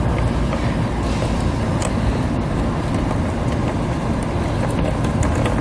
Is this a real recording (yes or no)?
yes